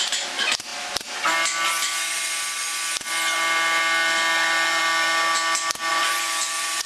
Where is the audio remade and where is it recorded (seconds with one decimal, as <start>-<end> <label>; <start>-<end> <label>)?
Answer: 0.0-5.9 recorded; 5.9-6.9 remade